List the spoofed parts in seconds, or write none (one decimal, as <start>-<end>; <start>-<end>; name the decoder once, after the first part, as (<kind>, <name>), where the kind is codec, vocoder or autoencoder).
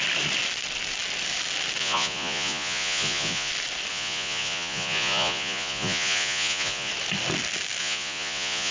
1.8-3.5 (vocoder, Vocos); 3.9-6.9; 7.8-8.7